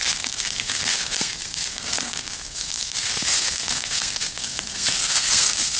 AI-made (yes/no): yes